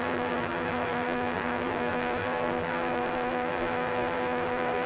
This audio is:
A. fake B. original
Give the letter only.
A